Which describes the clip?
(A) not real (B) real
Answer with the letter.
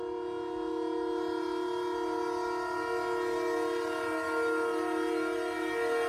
B